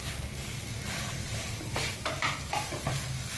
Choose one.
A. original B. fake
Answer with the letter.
A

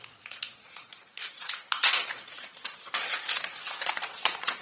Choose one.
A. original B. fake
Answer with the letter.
B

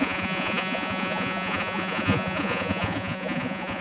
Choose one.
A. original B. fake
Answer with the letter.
B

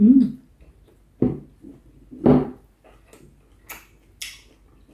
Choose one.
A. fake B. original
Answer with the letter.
B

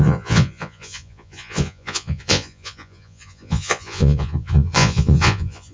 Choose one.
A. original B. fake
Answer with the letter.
B